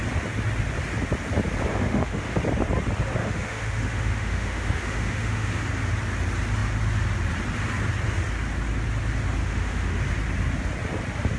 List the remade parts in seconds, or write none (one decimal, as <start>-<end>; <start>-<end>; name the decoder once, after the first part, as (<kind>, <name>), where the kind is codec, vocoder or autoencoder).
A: 1.7-2.4 (autoencoder, DAC-VAE); 3.2-5.5; 9.4-10.0